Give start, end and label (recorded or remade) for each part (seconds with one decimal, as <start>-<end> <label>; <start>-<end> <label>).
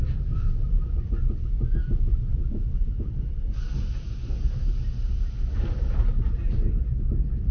0.0-7.5 recorded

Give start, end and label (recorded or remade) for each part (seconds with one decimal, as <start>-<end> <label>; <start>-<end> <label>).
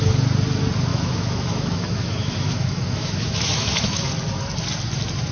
0.0-0.9 recorded; 0.9-4.1 remade; 4.1-5.3 recorded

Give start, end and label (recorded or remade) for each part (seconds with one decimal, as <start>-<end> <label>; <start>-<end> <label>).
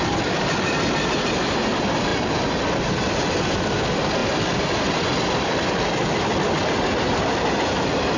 0.0-8.2 recorded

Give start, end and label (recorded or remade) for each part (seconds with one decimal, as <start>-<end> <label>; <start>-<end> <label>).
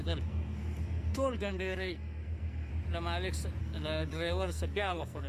0.0-2.7 remade; 2.7-3.6 recorded; 3.6-5.3 remade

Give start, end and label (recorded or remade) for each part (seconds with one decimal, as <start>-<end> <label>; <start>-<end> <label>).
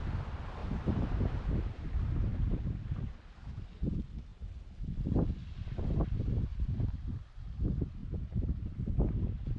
0.0-0.6 recorded; 0.6-3.7 remade; 3.7-8.0 recorded; 8.0-9.6 remade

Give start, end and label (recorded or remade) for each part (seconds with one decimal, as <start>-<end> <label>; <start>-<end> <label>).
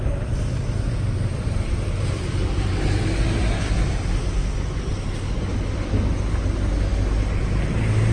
0.0-1.3 recorded; 1.3-3.9 remade; 3.9-8.1 recorded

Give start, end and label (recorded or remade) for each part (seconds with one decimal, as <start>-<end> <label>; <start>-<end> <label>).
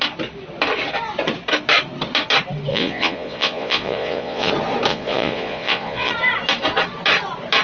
0.0-2.7 recorded; 2.7-4.5 remade; 4.5-4.9 recorded; 4.9-6.1 remade; 6.1-7.6 recorded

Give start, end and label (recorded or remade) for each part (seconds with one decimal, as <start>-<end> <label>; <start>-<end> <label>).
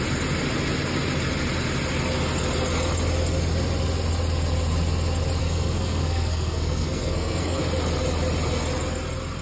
0.0-5.4 recorded; 5.4-7.6 remade; 7.6-9.4 recorded